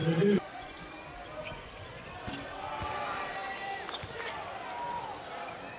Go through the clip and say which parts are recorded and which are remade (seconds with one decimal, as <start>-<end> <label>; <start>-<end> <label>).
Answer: 0.0-0.8 remade; 0.8-1.4 recorded; 1.4-2.1 remade; 2.1-5.8 recorded